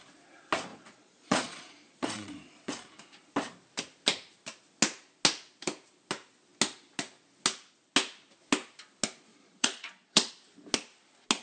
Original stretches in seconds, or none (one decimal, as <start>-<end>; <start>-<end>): 0.0-0.7; 2.7-9.3; 10.3-11.4